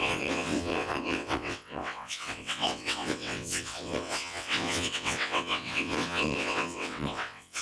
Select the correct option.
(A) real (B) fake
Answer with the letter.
B